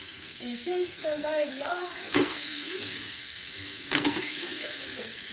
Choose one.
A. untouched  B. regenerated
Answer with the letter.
B